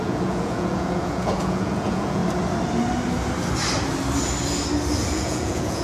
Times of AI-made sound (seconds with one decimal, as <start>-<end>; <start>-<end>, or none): 0.0-2.2; 5.1-5.8